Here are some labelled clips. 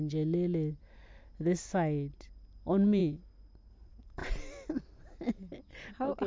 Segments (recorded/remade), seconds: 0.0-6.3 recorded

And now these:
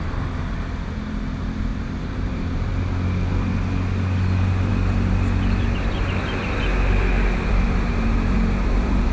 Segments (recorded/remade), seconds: 0.0-1.7 recorded; 1.7-2.7 remade; 2.7-7.9 recorded; 7.9-9.1 remade

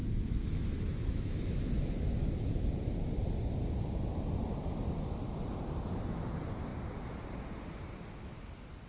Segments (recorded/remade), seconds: 0.0-2.7 remade; 2.7-8.9 recorded